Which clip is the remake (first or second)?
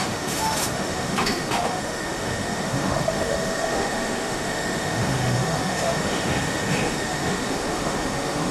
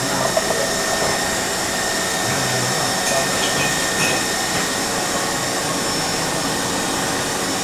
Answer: first